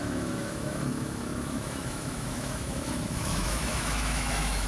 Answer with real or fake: fake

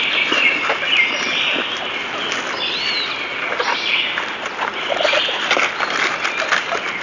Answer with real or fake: real